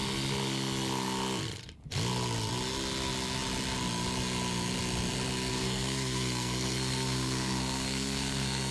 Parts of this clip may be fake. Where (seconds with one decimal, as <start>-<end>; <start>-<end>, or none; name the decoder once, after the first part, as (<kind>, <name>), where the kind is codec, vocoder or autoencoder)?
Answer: 5.5-8.7 (codec, SNAC)